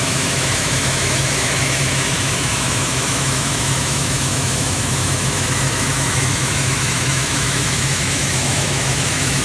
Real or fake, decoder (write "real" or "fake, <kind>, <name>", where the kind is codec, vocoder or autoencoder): fake, autoencoder, DAC-VAE